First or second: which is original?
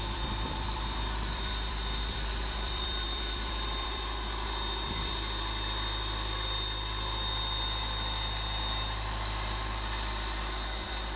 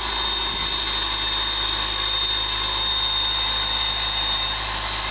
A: second